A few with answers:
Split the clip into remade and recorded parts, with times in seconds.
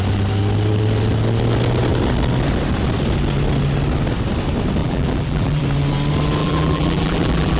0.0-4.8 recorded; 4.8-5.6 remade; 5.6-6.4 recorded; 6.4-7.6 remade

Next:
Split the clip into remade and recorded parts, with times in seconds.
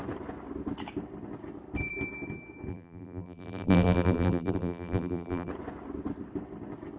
0.0-2.7 recorded; 2.7-5.5 remade; 5.5-7.0 recorded